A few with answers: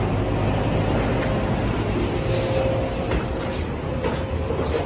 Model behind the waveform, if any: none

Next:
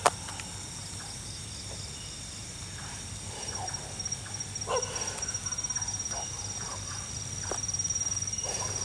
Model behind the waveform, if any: none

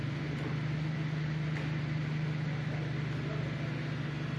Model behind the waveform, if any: none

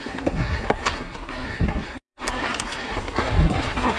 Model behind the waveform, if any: codec, SNAC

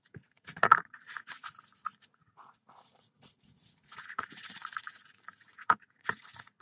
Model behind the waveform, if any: vocoder, Vocos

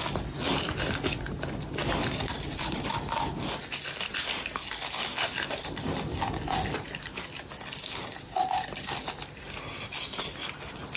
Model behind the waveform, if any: none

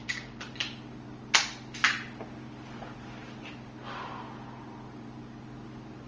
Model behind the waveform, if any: none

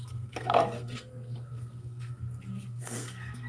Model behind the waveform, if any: codec, SNAC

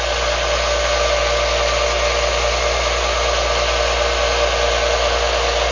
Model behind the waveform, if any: none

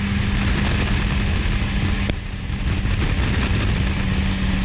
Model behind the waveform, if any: none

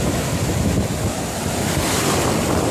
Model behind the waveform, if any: none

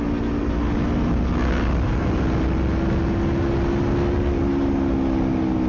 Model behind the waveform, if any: none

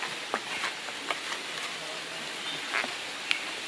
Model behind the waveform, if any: none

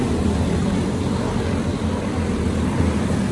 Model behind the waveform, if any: none